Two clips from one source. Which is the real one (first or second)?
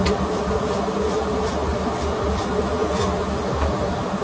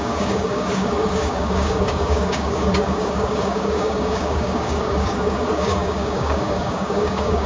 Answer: first